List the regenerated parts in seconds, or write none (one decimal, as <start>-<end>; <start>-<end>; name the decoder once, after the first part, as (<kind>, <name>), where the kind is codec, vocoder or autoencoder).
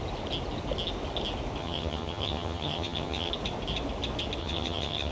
1.6-3.3 (vocoder, HiFi-GAN); 4.4-5.1